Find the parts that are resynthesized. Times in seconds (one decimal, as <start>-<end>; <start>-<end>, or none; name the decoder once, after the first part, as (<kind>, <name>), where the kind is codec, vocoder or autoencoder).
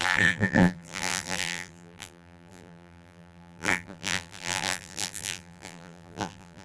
0.0-6.6 (vocoder, BigVGAN v2)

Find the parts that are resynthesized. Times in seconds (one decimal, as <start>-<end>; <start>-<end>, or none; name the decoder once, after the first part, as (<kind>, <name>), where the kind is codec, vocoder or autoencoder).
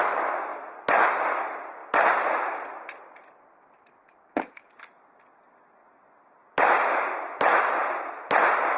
0.5-1.4 (vocoder, BigVGAN v2); 1.8-4.5; 5.8-8.8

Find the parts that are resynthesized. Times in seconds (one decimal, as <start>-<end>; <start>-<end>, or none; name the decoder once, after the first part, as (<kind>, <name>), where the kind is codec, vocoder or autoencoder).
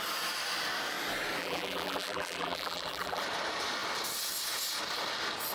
1.4-3.2 (vocoder, BigVGAN v2)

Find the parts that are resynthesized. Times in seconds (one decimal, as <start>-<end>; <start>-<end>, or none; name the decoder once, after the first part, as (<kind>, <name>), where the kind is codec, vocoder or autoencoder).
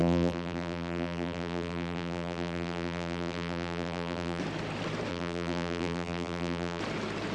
0.0-4.4 (vocoder, BigVGAN v2); 5.1-6.8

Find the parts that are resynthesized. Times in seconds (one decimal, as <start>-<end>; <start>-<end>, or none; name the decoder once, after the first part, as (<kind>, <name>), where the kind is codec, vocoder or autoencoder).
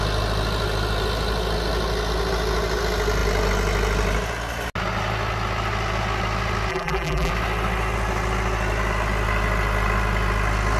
6.7-7.3 (vocoder, BigVGAN v2)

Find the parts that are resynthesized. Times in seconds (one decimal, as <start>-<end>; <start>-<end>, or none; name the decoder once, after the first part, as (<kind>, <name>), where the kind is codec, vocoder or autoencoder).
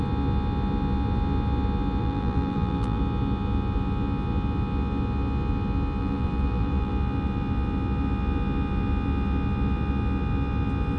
2.0-3.0 (vocoder, BigVGAN v2); 6.0-6.9